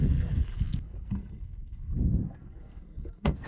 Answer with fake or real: fake